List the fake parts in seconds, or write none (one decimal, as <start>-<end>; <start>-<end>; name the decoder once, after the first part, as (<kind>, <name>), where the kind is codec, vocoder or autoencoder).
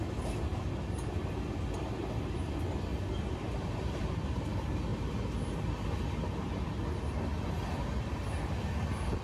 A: 2.9-4.1 (vocoder, BigVGAN v2)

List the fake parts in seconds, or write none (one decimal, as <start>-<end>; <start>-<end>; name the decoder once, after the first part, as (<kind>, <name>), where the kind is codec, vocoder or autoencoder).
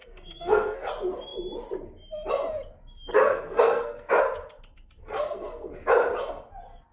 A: 0.0-0.9 (codec, SNAC); 3.1-4.2; 5.0-5.7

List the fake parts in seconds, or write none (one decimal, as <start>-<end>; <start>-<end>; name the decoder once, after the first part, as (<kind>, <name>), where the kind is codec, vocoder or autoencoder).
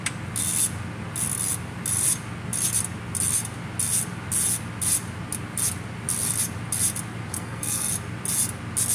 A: 7.3-7.9 (codec, SNAC)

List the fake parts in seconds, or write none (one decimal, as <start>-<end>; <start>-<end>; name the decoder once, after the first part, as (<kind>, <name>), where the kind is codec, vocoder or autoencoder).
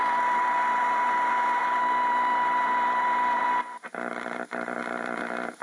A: 0.0-5.6 (vocoder, BigVGAN v2)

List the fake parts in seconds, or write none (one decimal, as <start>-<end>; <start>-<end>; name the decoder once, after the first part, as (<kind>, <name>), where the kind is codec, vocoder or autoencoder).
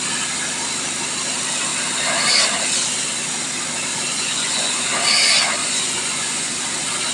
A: 3.9-4.9 (vocoder, Vocos); 5.6-6.5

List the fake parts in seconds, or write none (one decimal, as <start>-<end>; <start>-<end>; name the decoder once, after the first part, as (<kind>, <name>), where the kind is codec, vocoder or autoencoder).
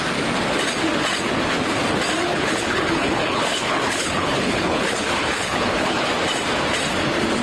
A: 2.3-6.1 (codec, HILCodec)